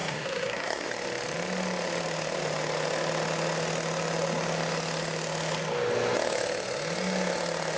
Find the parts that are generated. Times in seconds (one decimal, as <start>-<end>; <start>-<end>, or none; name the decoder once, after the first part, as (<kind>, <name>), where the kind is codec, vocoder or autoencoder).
0.0-0.9 (codec, SNAC)